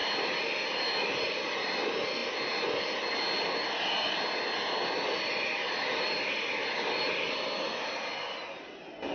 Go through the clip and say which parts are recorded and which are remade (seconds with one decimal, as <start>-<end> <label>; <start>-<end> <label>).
0.0-9.1 recorded